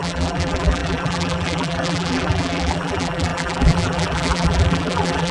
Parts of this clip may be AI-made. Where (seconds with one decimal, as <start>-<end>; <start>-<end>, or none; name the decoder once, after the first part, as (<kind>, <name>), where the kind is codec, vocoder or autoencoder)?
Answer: 0.0-5.3 (vocoder, BigVGAN v2)